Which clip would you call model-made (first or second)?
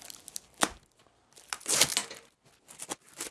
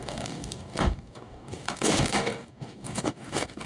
second